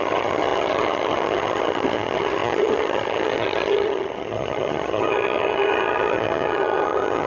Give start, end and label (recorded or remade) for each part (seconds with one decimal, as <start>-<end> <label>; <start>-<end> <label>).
0.0-7.3 remade

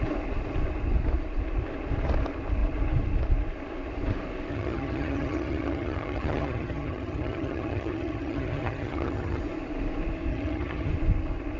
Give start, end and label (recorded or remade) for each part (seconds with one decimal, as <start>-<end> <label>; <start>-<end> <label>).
0.0-4.5 recorded; 4.5-9.4 remade; 9.4-10.3 recorded; 10.3-10.9 remade; 10.9-11.6 recorded

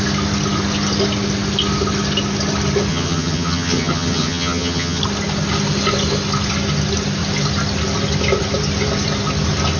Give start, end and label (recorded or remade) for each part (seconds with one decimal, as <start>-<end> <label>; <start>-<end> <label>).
0.0-2.9 recorded; 2.9-5.0 remade; 5.0-9.8 recorded

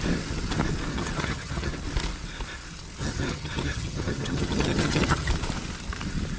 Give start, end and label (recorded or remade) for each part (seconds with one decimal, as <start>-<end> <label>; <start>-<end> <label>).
0.0-0.9 recorded; 0.9-1.7 remade; 1.7-3.0 recorded; 3.0-5.3 remade; 5.3-6.4 recorded